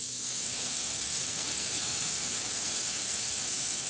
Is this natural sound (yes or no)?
no